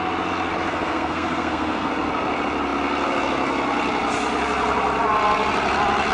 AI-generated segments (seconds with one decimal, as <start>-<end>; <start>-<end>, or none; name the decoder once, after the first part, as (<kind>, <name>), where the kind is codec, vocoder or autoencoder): 0.7-1.9 (codec, SNAC)

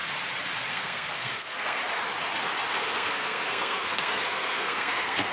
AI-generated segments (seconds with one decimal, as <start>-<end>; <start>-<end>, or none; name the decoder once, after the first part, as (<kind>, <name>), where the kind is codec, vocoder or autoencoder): 0.7-1.8 (codec, SNAC); 2.7-5.3

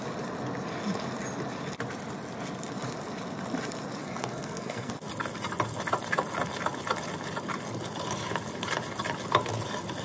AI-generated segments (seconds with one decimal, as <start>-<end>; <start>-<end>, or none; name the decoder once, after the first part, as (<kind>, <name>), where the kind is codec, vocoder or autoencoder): 4.0-4.9 (codec, SNAC)

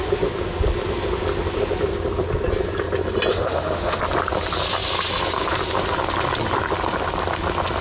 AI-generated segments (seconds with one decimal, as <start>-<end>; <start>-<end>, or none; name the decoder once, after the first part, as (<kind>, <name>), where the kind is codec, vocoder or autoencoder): 3.3-4.0 (autoencoder, DAC-VAE)

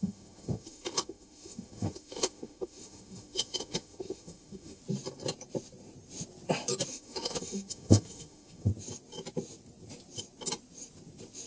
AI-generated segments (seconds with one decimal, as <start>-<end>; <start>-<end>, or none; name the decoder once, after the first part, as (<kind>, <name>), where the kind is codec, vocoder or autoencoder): 0.0-4.8 (autoencoder, DAC-VAE); 6.9-8.7

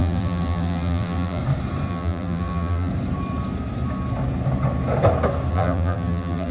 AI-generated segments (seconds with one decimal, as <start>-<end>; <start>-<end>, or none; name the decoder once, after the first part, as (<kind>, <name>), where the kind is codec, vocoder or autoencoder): 0.0-1.4 (vocoder, BigVGAN v2); 1.9-2.9; 5.5-6.5